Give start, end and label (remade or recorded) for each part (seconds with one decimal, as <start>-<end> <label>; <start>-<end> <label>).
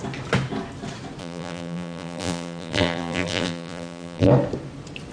0.0-1.2 recorded; 1.2-4.3 remade; 4.3-5.1 recorded